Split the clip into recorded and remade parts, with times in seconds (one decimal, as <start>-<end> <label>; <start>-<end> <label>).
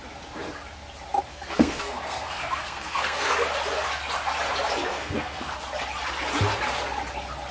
0.0-1.3 recorded; 1.3-3.3 remade; 3.3-4.9 recorded; 4.9-5.5 remade; 5.5-7.5 recorded